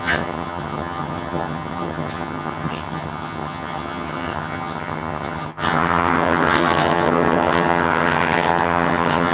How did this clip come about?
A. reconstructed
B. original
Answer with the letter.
A